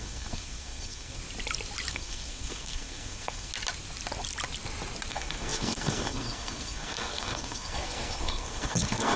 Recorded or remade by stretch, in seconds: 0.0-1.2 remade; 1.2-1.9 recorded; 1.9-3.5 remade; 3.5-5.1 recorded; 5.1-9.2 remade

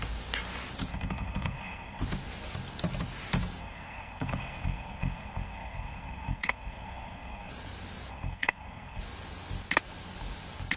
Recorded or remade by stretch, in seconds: 0.0-0.9 recorded; 0.9-2.0 remade; 2.0-3.6 recorded; 3.6-7.5 remade; 7.5-8.1 recorded; 8.1-9.0 remade; 9.0-10.8 recorded